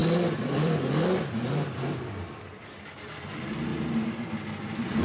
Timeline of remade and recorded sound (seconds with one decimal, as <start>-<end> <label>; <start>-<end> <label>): 0.0-3.0 remade; 3.0-5.0 recorded

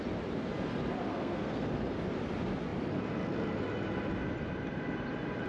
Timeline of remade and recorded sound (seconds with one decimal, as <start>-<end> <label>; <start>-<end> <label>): 0.0-1.1 recorded; 1.1-1.7 remade; 1.7-5.5 recorded